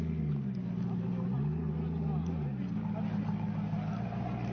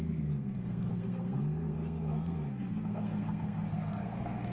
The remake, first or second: second